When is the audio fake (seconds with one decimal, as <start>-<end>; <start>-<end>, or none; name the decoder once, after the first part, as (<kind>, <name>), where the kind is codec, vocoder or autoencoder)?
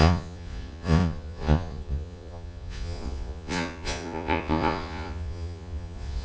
0.0-6.2 (vocoder, Vocos)